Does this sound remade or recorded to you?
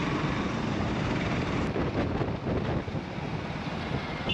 recorded